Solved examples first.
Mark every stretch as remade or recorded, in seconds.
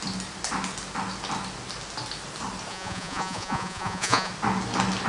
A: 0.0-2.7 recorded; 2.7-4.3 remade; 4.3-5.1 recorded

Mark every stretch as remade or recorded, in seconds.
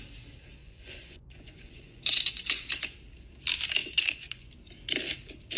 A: 0.0-0.6 recorded; 0.6-2.8 remade; 2.8-3.8 recorded; 3.8-4.5 remade; 4.5-5.6 recorded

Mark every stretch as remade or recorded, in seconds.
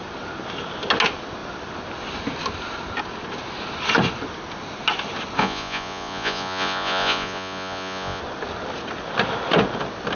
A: 0.0-5.4 recorded; 5.4-8.2 remade; 8.2-10.2 recorded